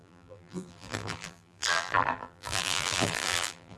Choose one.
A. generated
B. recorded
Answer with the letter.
A